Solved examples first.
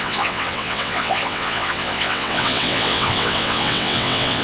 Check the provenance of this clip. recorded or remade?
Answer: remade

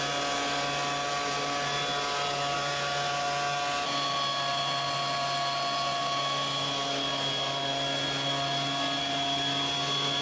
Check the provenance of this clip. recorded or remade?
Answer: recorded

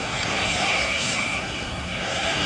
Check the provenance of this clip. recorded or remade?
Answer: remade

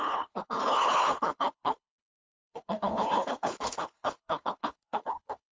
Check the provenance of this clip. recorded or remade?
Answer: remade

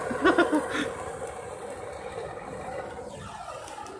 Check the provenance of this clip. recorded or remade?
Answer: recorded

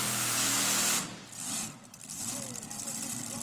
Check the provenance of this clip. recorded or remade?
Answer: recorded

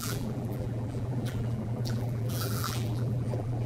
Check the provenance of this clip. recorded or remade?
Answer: remade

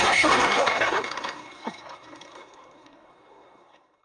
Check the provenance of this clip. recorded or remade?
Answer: remade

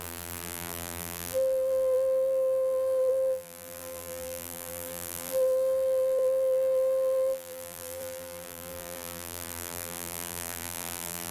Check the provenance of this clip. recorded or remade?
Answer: remade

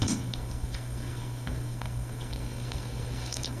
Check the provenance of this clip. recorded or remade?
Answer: remade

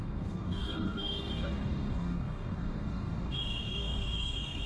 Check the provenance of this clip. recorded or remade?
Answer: remade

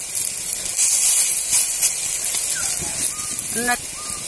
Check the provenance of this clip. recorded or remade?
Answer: recorded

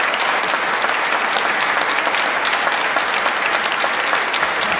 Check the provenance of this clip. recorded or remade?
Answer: recorded